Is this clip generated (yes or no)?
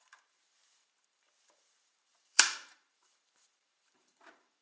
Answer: yes